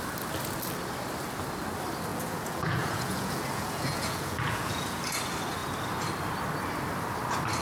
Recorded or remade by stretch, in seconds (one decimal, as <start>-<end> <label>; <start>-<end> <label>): 0.0-2.1 recorded; 2.1-5.0 remade; 5.0-7.6 recorded